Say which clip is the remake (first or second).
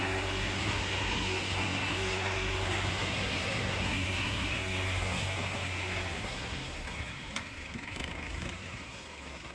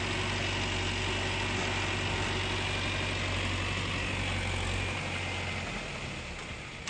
first